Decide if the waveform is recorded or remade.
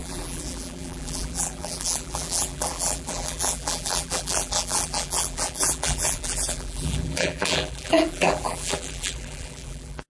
remade